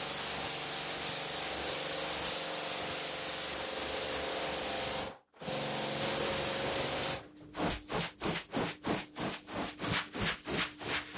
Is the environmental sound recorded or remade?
recorded